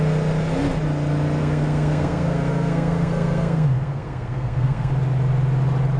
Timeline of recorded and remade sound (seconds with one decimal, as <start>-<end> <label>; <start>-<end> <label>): 0.0-1.4 recorded; 1.4-4.9 remade; 4.9-6.0 recorded